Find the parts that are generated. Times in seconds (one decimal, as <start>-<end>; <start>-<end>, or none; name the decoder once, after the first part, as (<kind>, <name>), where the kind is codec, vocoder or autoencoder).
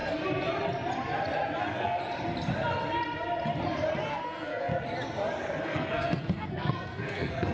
1.6-2.0 (codec, SNAC); 4.1-4.7; 5.6-7.5